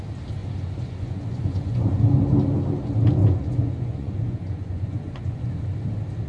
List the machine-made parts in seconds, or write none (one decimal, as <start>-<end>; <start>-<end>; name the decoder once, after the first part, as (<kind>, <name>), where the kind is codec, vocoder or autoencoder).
0.4-1.9 (vocoder, Vocos); 3.2-5.5